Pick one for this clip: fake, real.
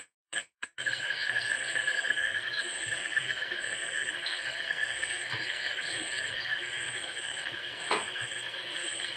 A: fake